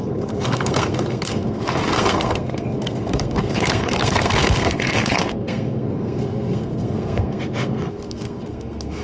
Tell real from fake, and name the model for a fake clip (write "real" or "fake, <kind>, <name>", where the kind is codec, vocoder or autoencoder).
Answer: fake, codec, SNAC